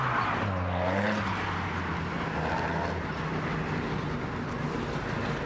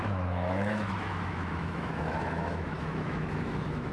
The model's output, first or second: second